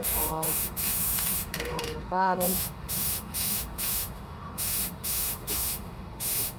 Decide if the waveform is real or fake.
fake